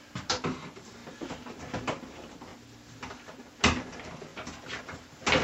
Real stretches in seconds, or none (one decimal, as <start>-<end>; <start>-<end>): 0.0-5.4